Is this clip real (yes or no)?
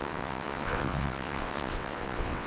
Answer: no